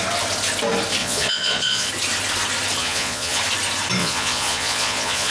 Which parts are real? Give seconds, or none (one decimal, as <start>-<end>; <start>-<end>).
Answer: 0.0-1.0; 1.9-2.8; 3.4-4.0